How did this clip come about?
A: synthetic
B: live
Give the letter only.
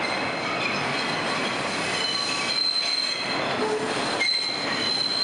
B